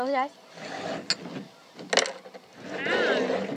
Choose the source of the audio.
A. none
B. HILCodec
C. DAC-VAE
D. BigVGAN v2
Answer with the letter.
A